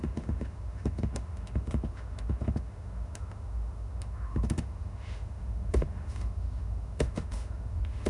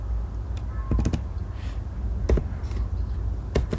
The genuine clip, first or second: second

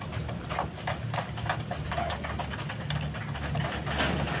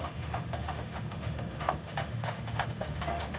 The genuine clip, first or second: first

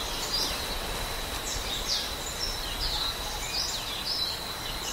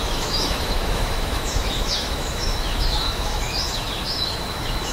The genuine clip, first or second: first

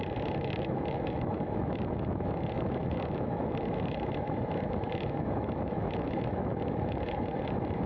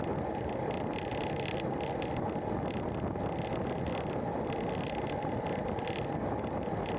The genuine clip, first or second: second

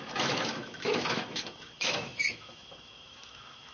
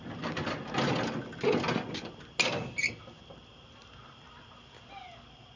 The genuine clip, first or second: second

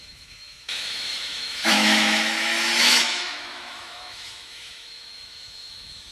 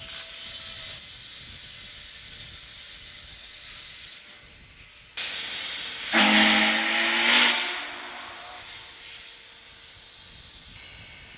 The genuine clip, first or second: second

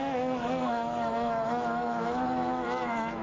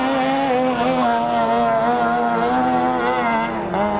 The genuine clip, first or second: second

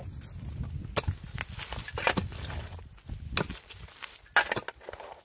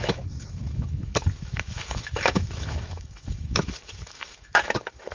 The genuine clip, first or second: first